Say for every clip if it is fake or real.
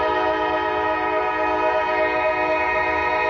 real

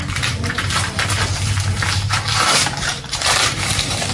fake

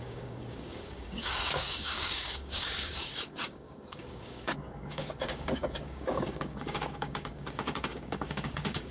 fake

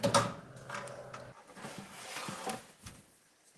real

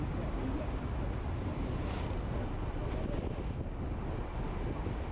real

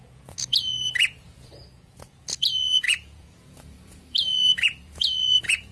fake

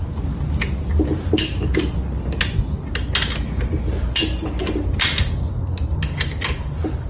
real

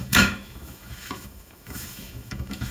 fake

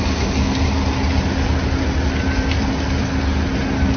real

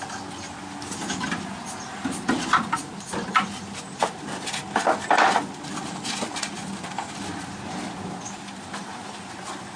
real